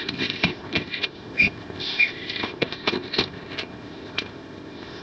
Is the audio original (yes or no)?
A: no